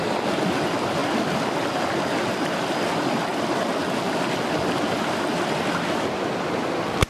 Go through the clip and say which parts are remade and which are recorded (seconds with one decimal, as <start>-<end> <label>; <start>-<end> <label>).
0.0-7.1 recorded